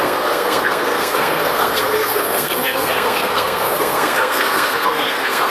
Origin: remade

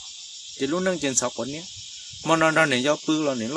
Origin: recorded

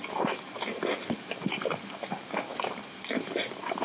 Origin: recorded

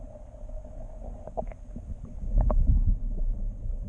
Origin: recorded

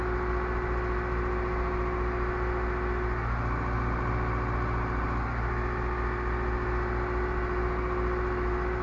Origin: recorded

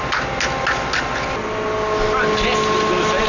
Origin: recorded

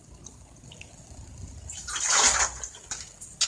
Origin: recorded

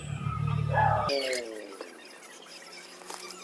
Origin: recorded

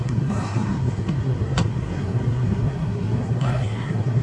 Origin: remade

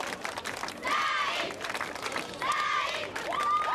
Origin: recorded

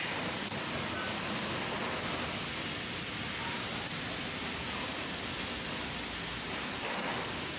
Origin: recorded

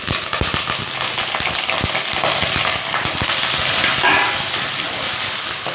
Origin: recorded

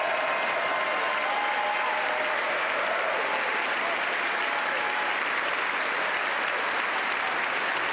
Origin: recorded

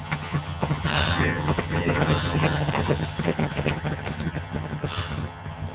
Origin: remade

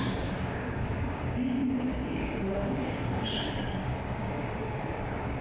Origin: remade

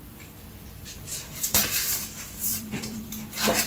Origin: remade